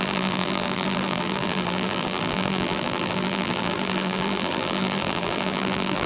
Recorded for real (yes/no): no